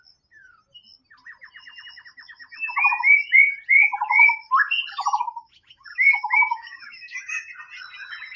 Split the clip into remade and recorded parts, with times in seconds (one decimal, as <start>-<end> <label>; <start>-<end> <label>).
0.0-5.4 recorded; 5.4-7.2 remade; 7.2-8.4 recorded